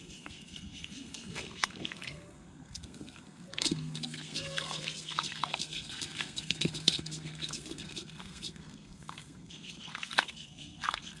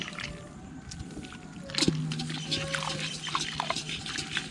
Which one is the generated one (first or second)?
first